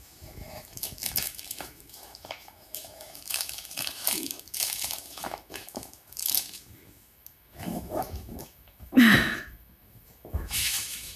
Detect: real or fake fake